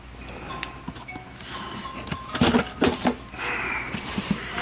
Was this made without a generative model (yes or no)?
yes